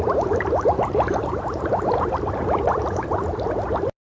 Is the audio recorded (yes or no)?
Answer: no